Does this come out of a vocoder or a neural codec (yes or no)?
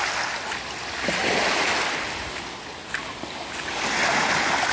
no